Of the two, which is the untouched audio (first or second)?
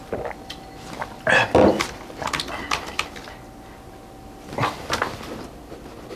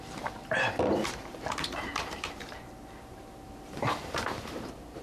first